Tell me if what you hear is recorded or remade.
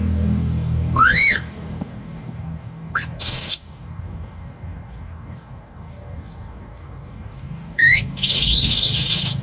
remade